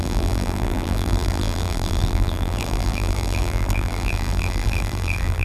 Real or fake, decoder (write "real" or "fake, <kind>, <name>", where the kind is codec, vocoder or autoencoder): fake, vocoder, BigVGAN v2